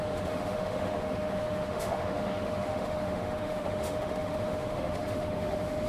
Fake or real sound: fake